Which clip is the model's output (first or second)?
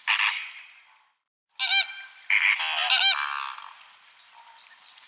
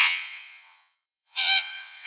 second